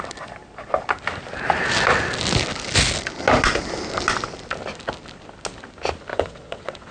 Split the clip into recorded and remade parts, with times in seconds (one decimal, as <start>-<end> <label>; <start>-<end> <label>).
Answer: 0.0-6.1 recorded; 6.1-6.9 remade